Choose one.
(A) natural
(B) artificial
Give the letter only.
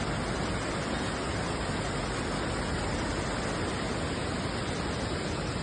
A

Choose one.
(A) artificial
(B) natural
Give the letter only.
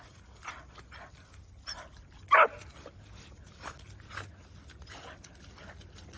B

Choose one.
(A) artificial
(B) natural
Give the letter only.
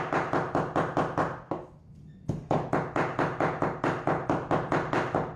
B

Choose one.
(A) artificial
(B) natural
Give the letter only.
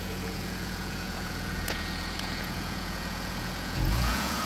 A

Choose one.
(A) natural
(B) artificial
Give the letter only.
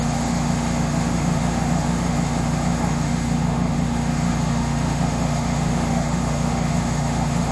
B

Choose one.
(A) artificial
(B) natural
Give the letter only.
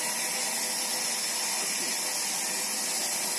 B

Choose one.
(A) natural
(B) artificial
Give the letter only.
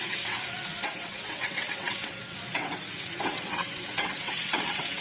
B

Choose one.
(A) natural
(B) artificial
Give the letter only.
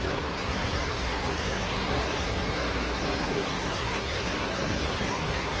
B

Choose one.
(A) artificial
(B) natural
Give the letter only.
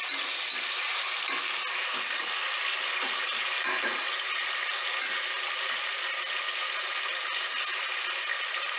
B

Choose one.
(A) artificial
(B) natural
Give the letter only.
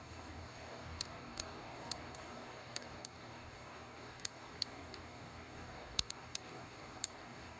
A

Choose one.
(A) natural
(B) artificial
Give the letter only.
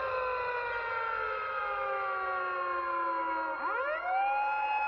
A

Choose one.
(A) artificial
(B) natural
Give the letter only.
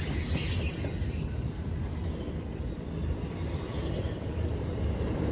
A